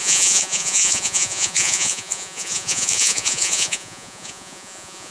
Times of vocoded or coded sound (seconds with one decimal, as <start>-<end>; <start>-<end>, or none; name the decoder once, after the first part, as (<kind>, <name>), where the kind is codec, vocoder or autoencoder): 0.0-5.1 (vocoder, Vocos)